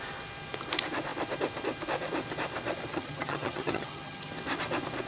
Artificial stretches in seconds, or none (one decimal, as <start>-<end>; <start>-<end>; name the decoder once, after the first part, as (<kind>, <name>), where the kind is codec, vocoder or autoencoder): 2.9-4.3 (vocoder, HiFi-GAN)